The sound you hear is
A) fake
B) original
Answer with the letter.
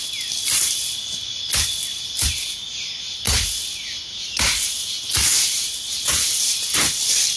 B